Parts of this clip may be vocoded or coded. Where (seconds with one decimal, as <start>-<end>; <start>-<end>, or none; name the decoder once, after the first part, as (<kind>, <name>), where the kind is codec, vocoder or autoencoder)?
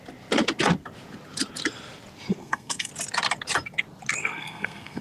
2.4-2.9 (codec, SNAC); 4.2-5.0